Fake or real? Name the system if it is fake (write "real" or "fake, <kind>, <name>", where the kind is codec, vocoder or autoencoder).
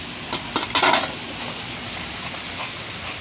real